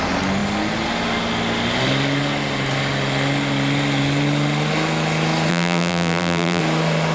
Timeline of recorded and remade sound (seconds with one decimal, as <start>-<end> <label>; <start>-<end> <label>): 0.0-5.5 recorded; 5.5-6.6 remade; 6.6-7.1 recorded